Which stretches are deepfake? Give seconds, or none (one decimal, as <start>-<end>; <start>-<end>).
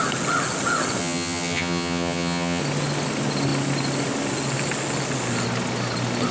1.0-2.6